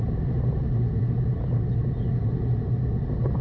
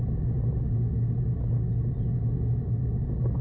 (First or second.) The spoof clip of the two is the first